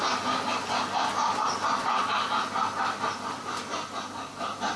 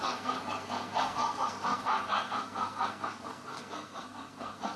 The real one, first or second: first